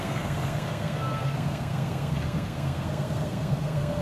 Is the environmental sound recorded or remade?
remade